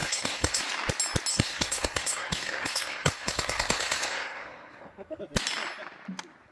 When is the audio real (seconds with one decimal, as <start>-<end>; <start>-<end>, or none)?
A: 0.6-1.3; 5.2-6.5